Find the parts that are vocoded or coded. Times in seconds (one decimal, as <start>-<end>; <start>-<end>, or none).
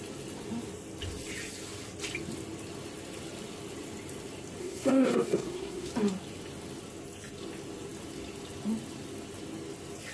4.6-5.9